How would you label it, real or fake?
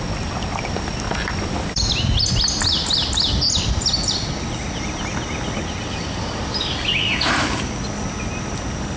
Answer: real